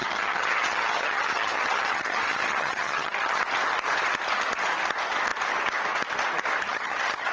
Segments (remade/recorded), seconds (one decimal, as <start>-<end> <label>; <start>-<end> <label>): 0.0-3.4 remade; 3.4-6.7 recorded; 6.7-7.3 remade